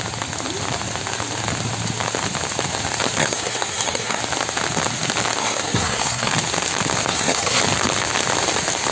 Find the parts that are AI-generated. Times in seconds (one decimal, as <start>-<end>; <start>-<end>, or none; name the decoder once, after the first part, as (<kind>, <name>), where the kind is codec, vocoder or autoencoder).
3.2-4.2 (codec, SNAC); 5.4-6.3; 7.1-7.6